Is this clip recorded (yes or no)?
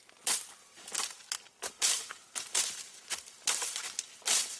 yes